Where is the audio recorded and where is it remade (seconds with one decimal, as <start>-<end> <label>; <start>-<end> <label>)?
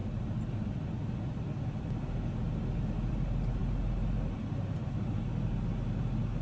0.0-6.4 recorded